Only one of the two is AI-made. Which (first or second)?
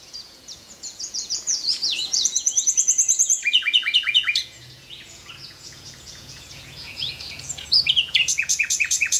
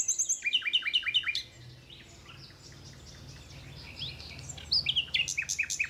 first